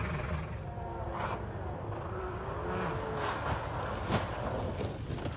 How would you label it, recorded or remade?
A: recorded